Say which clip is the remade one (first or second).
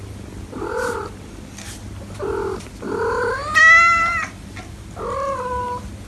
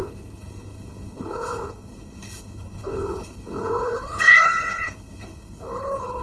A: second